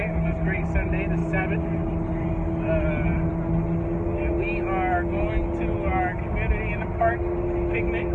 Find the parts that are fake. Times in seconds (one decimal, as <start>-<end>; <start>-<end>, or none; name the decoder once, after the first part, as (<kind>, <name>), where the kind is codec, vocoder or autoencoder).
none